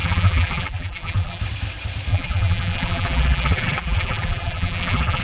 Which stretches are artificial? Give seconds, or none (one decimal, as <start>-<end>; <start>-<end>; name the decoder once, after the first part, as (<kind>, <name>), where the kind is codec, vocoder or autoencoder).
0.0-1.4 (vocoder, BigVGAN v2); 2.1-5.2